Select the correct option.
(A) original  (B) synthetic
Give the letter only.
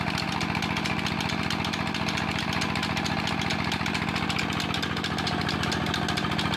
A